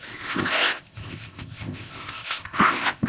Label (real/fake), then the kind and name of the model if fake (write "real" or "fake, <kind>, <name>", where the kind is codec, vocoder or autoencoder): fake, codec, ZipCodec